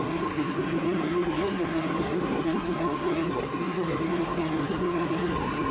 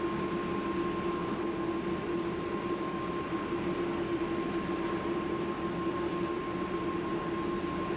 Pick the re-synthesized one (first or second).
first